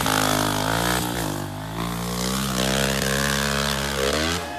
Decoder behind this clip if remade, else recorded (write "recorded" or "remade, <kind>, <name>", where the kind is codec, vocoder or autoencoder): recorded